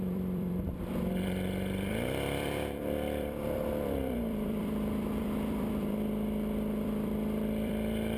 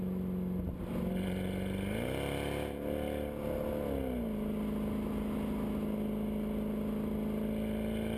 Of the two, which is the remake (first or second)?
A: first